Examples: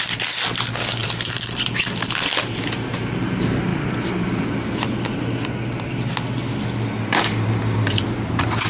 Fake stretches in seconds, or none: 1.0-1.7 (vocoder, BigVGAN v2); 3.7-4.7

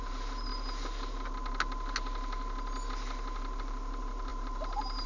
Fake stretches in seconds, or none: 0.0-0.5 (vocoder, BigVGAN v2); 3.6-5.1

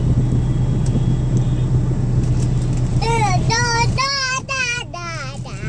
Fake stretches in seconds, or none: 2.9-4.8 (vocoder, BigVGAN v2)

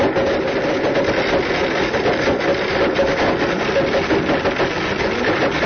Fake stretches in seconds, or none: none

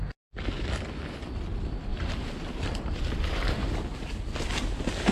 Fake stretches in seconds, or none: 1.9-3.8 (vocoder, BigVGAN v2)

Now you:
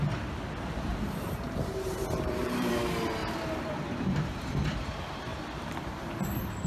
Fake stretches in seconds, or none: 0.9-2.7 (vocoder, BigVGAN v2); 3.2-4.3

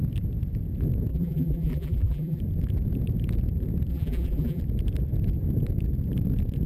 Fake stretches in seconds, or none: 1.1-2.4 (vocoder, BigVGAN v2); 3.9-4.6